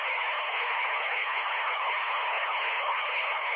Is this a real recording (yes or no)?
no